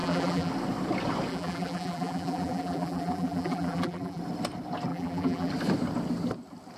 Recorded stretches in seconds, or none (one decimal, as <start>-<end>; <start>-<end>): 0.5-1.3; 4.2-4.9; 5.5-6.8